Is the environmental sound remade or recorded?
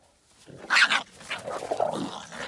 recorded